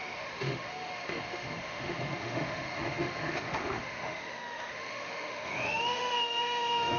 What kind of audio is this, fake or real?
fake